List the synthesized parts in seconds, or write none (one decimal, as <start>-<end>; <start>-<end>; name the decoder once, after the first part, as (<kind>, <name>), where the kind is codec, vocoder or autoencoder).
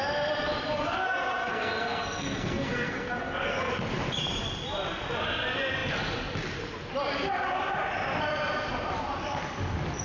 1.4-3.7 (codec, SNAC)